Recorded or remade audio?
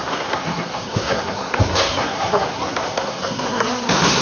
remade